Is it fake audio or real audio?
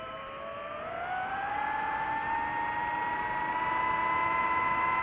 real